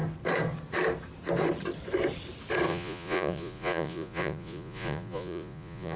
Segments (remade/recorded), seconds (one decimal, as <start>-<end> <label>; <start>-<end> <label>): 0.0-2.7 recorded; 2.7-6.0 remade